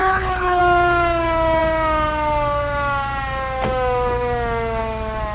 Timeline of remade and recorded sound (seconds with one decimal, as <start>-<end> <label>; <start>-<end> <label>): 0.0-0.6 remade; 0.6-5.3 recorded